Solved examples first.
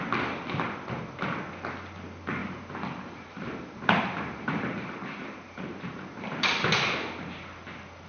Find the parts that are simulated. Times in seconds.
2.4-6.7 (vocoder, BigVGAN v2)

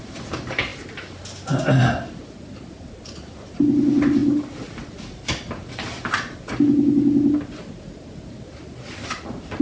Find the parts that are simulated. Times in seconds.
none

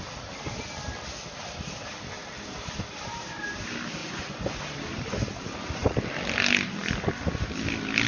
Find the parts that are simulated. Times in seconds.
4.0-4.6 (vocoder, Vocos)

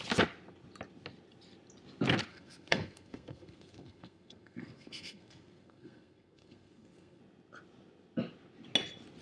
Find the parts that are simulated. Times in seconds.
2.3-7.2 (codec, SNAC)

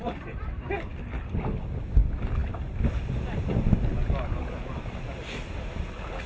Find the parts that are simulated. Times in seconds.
none

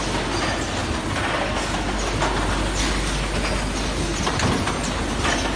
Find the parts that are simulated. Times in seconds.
none

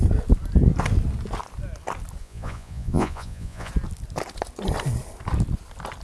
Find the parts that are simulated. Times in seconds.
2.2-3.7 (vocoder, Vocos)